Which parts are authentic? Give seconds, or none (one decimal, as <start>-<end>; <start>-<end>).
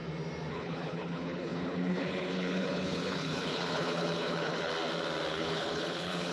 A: 0.0-0.5; 4.7-5.3